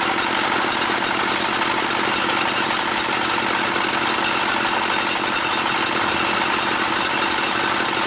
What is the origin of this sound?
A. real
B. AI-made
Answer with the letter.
A